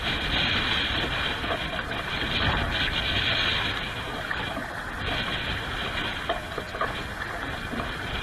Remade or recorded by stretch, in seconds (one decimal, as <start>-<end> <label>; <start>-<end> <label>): 0.0-8.2 recorded

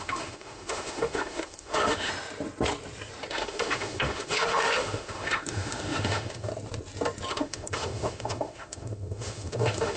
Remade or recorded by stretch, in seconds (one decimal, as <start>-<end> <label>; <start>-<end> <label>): 0.0-2.1 remade; 2.1-3.3 recorded; 3.3-6.5 remade; 6.5-7.3 recorded; 7.3-10.0 remade

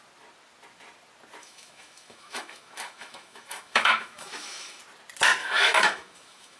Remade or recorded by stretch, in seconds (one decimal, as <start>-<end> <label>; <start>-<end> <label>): 0.0-1.4 recorded; 1.4-4.8 remade; 4.8-5.4 recorded; 5.4-6.6 remade

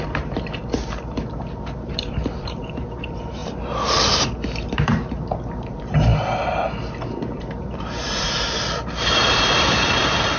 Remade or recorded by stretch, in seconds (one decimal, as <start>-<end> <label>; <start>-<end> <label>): 0.0-6.1 remade; 6.1-7.4 recorded; 7.4-10.4 remade